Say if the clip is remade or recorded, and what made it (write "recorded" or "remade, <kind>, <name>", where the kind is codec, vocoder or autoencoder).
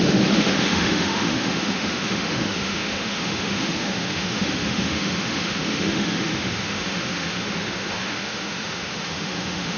remade, autoencoder, DAC-VAE